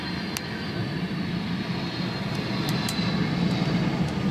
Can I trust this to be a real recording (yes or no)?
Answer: yes